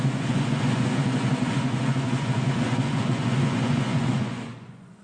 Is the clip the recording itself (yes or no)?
no